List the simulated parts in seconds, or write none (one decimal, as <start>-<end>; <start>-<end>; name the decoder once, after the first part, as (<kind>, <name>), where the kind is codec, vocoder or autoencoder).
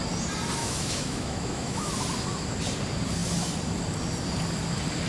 0.6-1.9 (autoencoder, DAC-VAE)